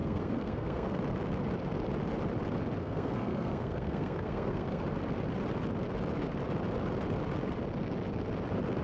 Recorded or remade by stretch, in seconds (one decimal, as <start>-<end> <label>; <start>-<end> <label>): 0.0-1.0 remade; 1.0-2.8 recorded; 2.8-4.8 remade; 4.8-8.8 recorded

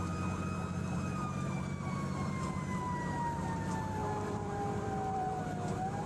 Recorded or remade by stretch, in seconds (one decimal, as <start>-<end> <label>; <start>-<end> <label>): 0.0-4.0 recorded; 4.0-5.4 remade; 5.4-6.1 recorded

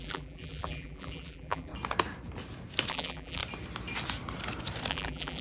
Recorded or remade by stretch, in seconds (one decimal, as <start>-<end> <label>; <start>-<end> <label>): 0.0-1.7 remade; 1.7-2.9 recorded; 2.9-3.4 remade; 3.4-4.9 recorded; 4.9-5.4 remade

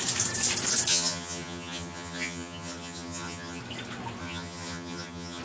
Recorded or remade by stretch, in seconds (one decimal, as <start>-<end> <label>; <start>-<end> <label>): 0.0-0.9 recorded; 0.9-3.6 remade; 3.6-4.2 recorded; 4.2-5.4 remade

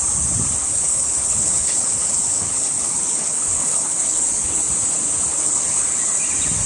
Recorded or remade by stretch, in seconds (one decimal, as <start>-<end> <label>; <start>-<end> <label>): 0.0-0.6 recorded; 0.6-4.6 remade; 4.6-5.3 recorded; 5.3-6.0 remade; 6.0-6.7 recorded

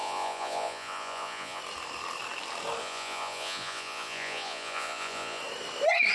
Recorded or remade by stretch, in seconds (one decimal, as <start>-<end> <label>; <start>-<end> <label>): 0.0-1.6 remade; 1.6-2.8 recorded; 2.8-5.4 remade; 5.4-6.1 recorded

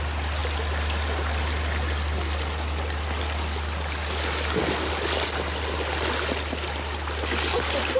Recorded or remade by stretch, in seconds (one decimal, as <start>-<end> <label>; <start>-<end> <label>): 0.0-8.0 recorded

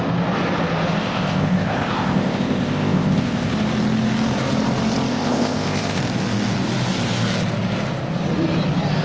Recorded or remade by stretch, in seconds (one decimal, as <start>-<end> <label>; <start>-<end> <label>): 0.0-1.0 recorded; 1.0-3.5 remade; 3.5-5.1 recorded; 5.1-6.0 remade; 6.0-9.0 recorded